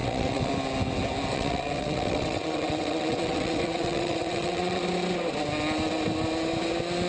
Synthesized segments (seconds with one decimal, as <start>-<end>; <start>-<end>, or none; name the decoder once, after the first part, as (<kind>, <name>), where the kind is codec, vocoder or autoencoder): 0.0-0.5 (vocoder, WaveNeXt); 1.3-4.8